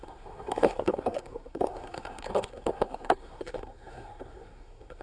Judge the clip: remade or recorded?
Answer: remade